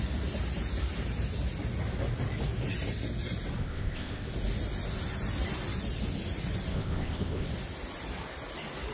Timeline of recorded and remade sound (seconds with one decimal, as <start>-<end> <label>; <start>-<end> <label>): 0.0-3.6 recorded; 3.6-4.3 remade; 4.3-6.7 recorded; 6.7-7.5 remade; 7.5-8.9 recorded